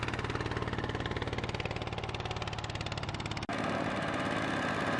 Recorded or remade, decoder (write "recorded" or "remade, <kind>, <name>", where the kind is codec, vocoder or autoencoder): recorded